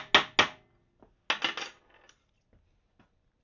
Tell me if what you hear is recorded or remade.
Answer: recorded